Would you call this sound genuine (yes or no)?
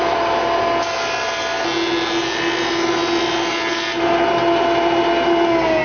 yes